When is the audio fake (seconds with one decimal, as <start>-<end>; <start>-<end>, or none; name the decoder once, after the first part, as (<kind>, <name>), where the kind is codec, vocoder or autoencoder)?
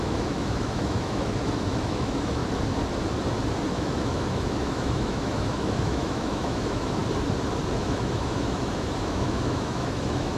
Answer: 0.0-2.4 (autoencoder, DAC-VAE); 3.7-7.0; 7.7-10.4